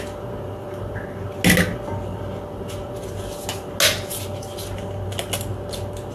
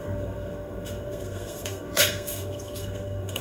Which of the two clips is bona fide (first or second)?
first